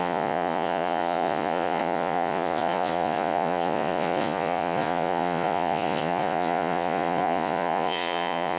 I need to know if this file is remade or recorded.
remade